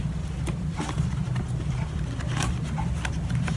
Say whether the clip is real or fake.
real